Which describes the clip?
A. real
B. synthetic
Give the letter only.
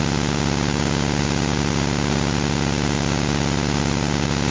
A